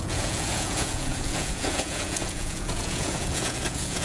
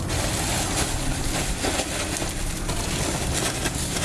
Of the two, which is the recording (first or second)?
second